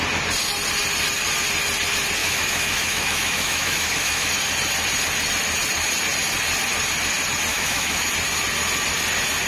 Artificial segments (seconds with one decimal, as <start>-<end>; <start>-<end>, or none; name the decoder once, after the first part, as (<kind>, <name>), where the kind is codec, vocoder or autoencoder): 2.2-4.3 (autoencoder, DAC-VAE); 7.5-8.1